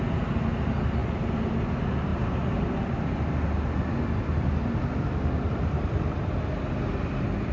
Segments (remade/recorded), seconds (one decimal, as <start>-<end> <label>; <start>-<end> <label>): 0.0-1.0 recorded; 1.0-1.5 remade; 1.5-2.1 recorded; 2.1-3.1 remade; 3.1-4.6 recorded; 4.6-6.3 remade; 6.3-7.5 recorded

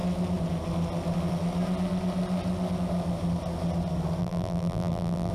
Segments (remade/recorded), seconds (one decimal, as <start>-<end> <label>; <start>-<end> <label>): 0.0-4.2 recorded; 4.2-5.3 remade

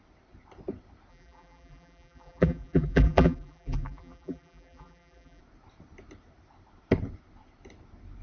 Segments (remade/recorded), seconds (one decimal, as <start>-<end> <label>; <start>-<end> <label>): 0.0-1.1 recorded; 1.1-5.4 remade; 5.4-8.2 recorded

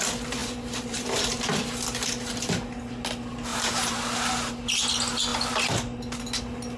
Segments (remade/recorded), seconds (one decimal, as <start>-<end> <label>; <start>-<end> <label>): 0.0-0.4 recorded; 0.4-1.4 remade; 1.4-3.5 recorded; 3.5-4.5 remade; 4.5-6.8 recorded

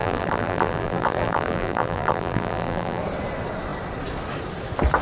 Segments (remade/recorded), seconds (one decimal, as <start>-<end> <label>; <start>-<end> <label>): 0.0-3.0 remade; 3.0-5.0 recorded